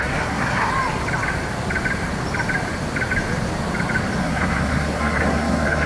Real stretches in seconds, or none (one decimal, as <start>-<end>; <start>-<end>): 0.7-4.2